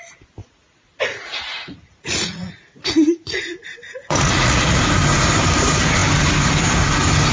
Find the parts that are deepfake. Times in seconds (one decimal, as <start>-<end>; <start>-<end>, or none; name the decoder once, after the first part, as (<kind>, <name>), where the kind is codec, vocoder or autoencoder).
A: 0.4-4.8 (vocoder, Vocos)